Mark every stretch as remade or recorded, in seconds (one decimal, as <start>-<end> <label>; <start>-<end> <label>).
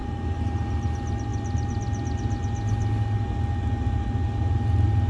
0.0-0.5 remade; 0.5-5.1 recorded